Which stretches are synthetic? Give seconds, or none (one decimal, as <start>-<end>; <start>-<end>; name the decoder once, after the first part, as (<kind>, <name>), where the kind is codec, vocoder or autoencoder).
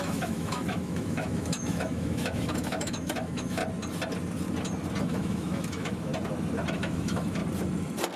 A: 0.0-3.6 (autoencoder, DAC-VAE); 5.0-6.1; 6.7-7.4